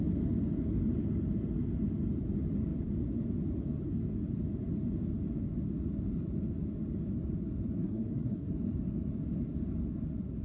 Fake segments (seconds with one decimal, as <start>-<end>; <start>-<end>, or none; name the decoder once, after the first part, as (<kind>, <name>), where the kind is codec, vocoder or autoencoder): 7.8-8.5 (codec, SNAC)